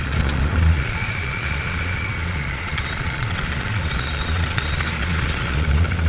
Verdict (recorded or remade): remade